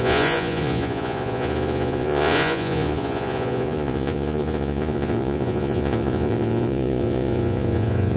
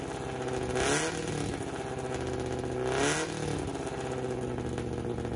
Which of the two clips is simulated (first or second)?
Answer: first